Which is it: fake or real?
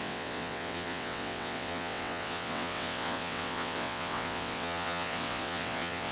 fake